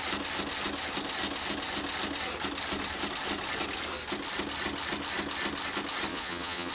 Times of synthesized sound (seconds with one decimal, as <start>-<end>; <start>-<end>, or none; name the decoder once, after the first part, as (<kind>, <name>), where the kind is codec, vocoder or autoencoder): 6.1-6.7 (vocoder, Vocos)

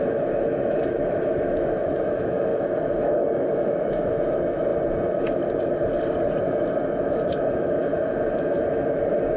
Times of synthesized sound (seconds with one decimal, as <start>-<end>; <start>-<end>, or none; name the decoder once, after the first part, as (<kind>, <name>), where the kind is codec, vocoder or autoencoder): 0.0-4.7 (autoencoder, DAC-VAE); 6.8-9.4

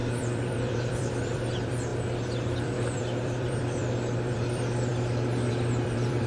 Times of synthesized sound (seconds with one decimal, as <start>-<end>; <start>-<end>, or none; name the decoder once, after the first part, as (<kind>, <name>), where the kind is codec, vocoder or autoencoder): 0.0-1.9 (vocoder, BigVGAN v2); 2.6-6.3

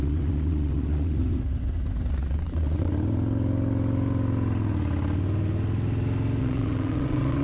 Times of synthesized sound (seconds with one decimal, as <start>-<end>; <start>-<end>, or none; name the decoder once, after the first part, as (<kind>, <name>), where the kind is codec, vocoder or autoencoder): 0.0-1.2 (vocoder, WaveNeXt); 2.1-2.9; 6.4-7.4

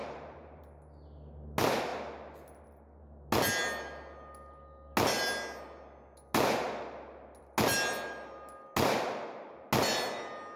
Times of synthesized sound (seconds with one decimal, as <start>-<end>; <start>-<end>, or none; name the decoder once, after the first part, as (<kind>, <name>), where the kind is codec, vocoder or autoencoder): 0.0-0.6 (vocoder, BigVGAN v2)

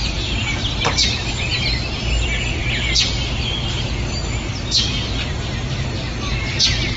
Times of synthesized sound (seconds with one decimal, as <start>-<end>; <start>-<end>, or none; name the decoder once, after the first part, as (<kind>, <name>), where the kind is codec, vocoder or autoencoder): none

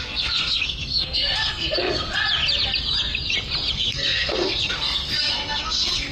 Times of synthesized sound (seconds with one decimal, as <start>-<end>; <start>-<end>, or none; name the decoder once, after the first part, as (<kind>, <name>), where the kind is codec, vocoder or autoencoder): 0.0-2.2 (codec, SNAC); 3.7-6.1

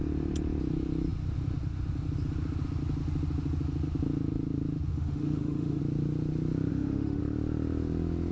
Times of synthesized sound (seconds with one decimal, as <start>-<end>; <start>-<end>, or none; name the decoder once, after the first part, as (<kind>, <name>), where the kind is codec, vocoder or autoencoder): 4.9-5.8 (autoencoder, DAC-VAE); 6.7-7.2